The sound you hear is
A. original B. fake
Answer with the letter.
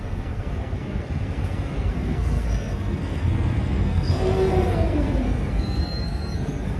B